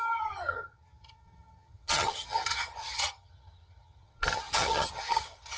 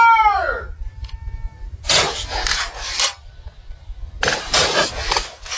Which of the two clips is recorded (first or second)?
second